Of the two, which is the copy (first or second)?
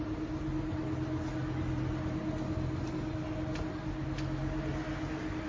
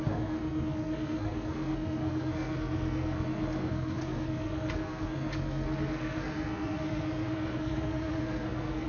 second